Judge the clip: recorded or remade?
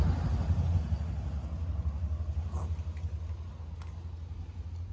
recorded